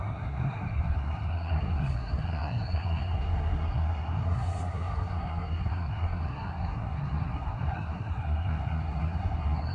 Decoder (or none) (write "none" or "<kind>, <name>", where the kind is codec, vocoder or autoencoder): codec, SNAC